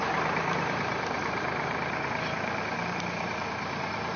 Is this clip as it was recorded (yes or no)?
no